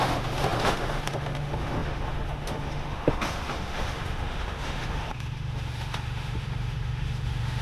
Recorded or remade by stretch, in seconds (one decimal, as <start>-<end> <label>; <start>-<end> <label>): 0.0-7.6 remade